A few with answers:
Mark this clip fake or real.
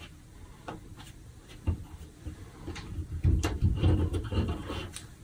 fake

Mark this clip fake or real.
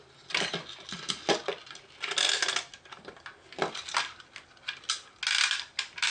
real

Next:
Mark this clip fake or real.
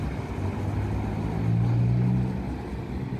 real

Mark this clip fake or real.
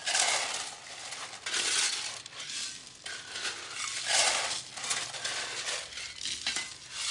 real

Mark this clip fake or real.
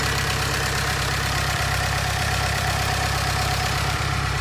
fake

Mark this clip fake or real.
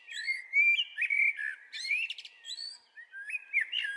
real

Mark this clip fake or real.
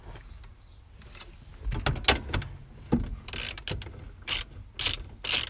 real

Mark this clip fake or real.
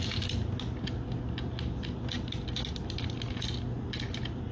real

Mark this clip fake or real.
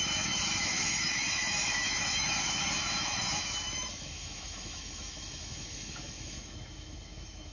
fake